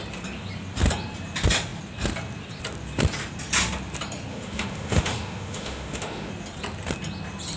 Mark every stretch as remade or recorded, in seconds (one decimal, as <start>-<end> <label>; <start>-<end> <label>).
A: 0.0-4.3 recorded; 4.3-6.3 remade; 6.3-7.6 recorded